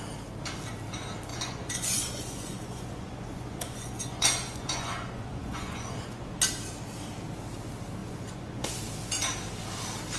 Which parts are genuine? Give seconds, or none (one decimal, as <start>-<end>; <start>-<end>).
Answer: 0.0-1.3; 6.3-8.0; 8.8-10.2